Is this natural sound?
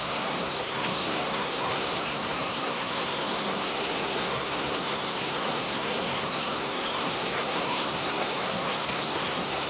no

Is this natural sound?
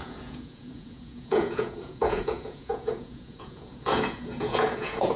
no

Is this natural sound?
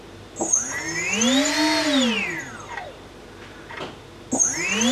yes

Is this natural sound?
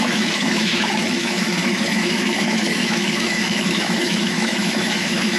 no